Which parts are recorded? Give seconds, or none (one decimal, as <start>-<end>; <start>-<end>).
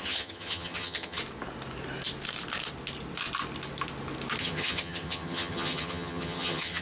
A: 1.2-4.4